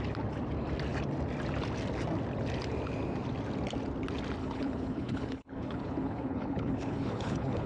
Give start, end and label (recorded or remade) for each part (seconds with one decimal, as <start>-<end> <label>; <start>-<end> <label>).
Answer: 0.0-4.4 recorded; 4.4-7.7 remade